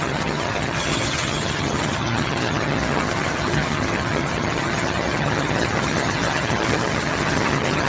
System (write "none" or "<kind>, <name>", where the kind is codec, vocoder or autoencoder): vocoder, HiFi-GAN